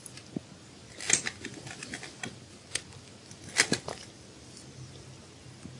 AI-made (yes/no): no